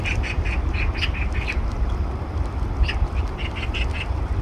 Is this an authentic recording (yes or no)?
yes